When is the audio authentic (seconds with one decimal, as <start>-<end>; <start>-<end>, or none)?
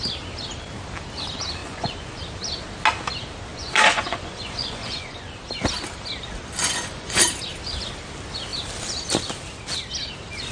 0.0-1.6; 2.2-3.5; 5.4-6.6; 7.2-10.5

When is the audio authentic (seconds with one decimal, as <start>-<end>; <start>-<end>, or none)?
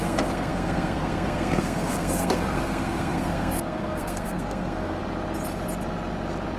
5.0-6.6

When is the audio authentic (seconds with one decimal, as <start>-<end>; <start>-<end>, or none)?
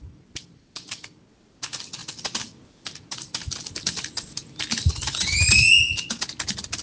0.0-6.8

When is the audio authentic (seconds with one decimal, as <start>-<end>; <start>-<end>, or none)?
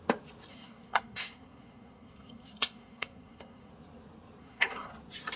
0.0-0.5; 3.7-4.4; 4.9-5.4